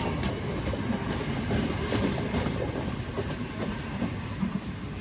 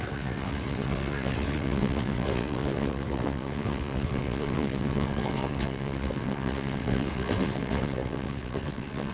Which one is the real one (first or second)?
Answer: first